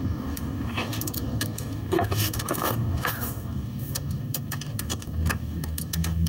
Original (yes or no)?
no